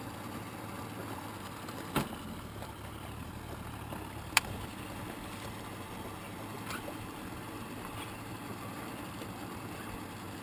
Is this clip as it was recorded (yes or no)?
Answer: yes